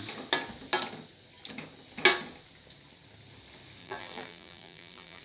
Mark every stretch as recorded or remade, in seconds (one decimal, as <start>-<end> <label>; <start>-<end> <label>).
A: 0.0-3.8 recorded; 3.8-5.2 remade